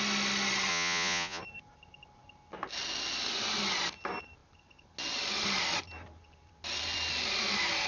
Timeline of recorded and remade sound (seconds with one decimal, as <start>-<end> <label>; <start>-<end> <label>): 0.0-0.7 recorded; 0.7-1.4 remade; 1.4-7.9 recorded